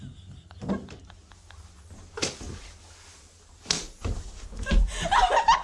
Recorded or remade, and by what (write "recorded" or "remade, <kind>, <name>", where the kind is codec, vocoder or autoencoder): recorded